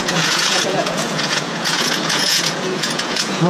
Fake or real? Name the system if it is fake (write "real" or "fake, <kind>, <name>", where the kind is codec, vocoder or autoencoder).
fake, vocoder, Vocos